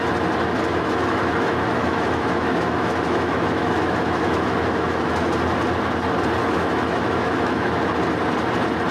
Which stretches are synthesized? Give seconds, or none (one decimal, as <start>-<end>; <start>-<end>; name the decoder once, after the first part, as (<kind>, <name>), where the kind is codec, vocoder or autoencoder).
0.7-5.3 (autoencoder, DAC-VAE); 6.4-7.8